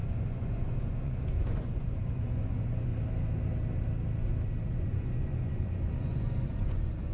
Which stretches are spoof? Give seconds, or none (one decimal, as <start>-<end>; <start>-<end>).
0.0-2.9; 4.7-7.1